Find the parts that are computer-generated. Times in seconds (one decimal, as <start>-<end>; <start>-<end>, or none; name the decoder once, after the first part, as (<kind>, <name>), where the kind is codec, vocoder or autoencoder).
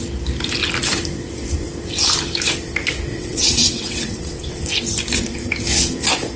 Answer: 3.1-4.6 (vocoder, WaveNeXt)